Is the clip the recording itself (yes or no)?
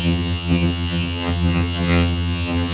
no